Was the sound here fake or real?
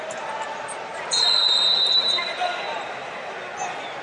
real